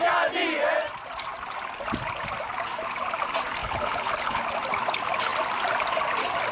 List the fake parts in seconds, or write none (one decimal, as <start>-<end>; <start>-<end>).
3.6-4.4